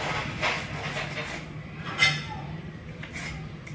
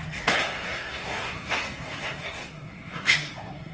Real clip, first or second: first